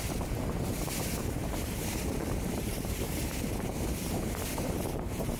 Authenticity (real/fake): fake